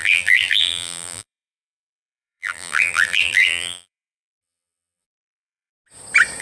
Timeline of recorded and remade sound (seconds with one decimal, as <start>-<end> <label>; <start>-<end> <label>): 0.0-5.7 remade; 5.7-6.4 recorded